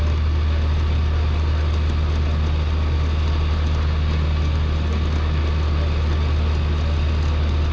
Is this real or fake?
real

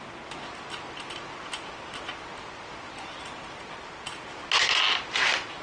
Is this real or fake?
real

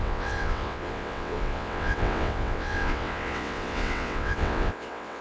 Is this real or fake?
fake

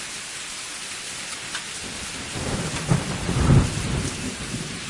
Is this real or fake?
real